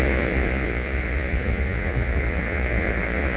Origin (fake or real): fake